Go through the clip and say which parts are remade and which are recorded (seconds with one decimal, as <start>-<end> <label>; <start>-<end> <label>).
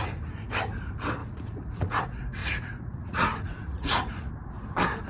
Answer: 0.0-1.2 recorded; 1.2-2.0 remade; 2.0-2.4 recorded; 2.4-4.3 remade; 4.3-5.1 recorded